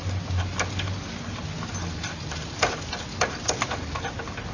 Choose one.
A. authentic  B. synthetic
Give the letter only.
A